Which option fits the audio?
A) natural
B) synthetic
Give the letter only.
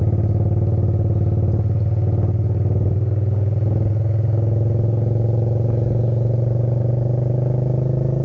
A